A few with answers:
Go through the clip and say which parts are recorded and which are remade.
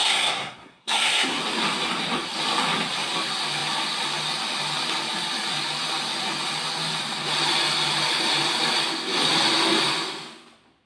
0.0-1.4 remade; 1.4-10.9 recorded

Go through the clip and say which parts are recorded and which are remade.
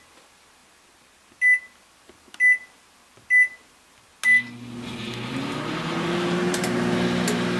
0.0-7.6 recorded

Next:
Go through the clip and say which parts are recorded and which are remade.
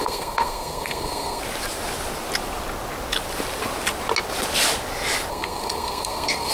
0.0-1.4 remade; 1.4-5.3 recorded; 5.3-6.5 remade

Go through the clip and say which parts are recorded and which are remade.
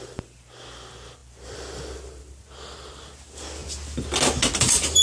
0.0-5.0 recorded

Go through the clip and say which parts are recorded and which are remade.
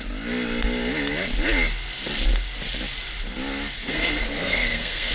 0.0-3.8 recorded; 3.8-5.1 remade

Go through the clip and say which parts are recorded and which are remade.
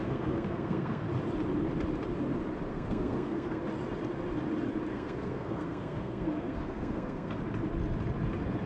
0.0-1.1 remade; 1.1-2.7 recorded; 2.7-3.6 remade; 3.6-4.9 recorded; 4.9-7.4 remade; 7.4-8.7 recorded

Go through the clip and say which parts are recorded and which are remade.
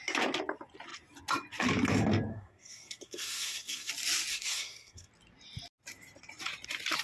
0.0-2.3 recorded; 2.3-3.9 remade; 3.9-4.3 recorded; 4.3-5.1 remade; 5.1-7.0 recorded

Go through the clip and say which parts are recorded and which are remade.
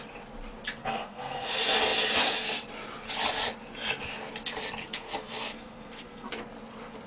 0.0-0.8 recorded; 0.8-1.5 remade; 1.5-4.8 recorded; 4.8-6.3 remade; 6.3-7.1 recorded